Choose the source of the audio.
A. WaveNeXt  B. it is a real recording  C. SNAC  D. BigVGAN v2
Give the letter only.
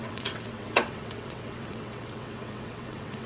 A